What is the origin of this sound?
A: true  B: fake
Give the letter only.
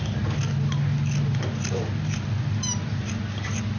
A